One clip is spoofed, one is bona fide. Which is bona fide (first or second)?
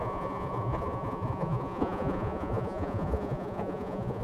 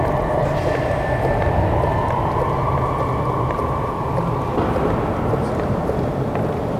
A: second